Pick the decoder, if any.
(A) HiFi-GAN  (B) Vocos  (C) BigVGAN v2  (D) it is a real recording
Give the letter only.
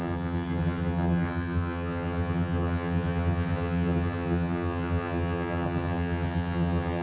A